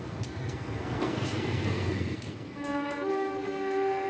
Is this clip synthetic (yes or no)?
yes